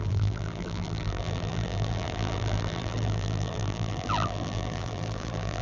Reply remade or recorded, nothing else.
remade